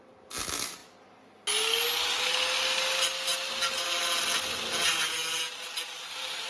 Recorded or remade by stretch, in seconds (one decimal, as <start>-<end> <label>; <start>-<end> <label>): 0.0-6.5 recorded